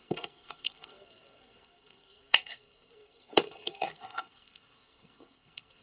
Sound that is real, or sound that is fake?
fake